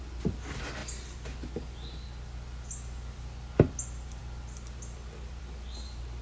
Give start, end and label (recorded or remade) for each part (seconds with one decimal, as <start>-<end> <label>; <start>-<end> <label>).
0.0-6.2 recorded